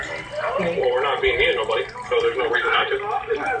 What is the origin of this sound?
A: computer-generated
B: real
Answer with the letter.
A